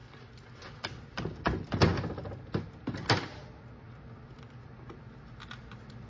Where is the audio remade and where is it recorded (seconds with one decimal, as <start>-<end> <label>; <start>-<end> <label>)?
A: 0.0-6.1 recorded